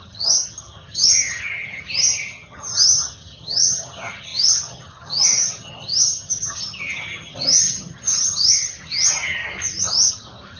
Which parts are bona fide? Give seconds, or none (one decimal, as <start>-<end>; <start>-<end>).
9.4-10.1